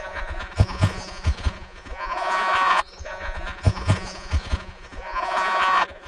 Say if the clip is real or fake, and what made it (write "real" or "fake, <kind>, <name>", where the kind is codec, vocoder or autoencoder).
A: fake, vocoder, Vocos